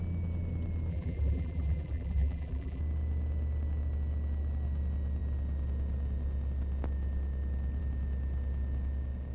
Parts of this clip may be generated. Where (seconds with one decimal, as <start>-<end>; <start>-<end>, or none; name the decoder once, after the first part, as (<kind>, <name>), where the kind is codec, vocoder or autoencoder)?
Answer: 0.9-2.8 (vocoder, BigVGAN v2)